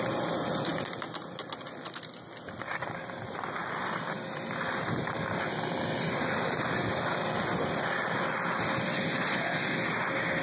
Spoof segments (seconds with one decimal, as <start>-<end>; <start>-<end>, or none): none